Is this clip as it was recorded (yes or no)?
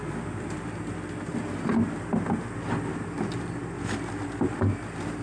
yes